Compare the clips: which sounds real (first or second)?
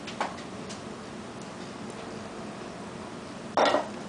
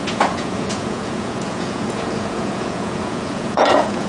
first